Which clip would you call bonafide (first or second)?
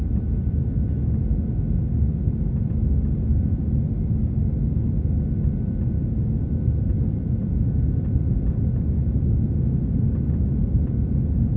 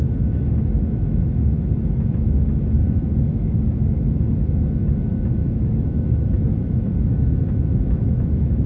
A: first